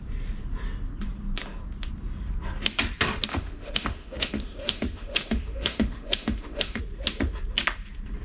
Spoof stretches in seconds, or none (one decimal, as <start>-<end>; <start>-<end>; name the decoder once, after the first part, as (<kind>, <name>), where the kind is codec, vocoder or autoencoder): 3.3-6.8 (autoencoder, DAC-VAE)